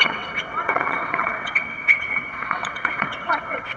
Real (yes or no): no